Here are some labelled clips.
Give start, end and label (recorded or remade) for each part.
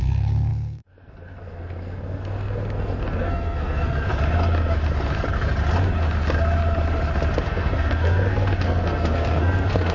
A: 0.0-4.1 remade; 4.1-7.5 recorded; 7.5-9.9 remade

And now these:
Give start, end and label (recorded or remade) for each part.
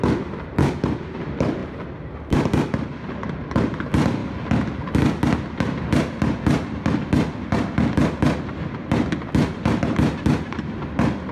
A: 0.0-11.3 recorded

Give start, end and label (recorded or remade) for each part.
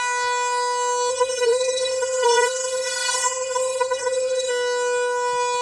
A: 0.0-1.1 recorded; 1.1-4.5 remade; 4.5-5.6 recorded